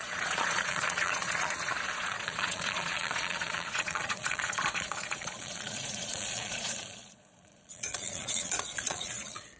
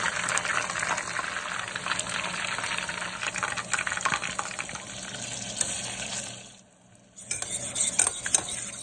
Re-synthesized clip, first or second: first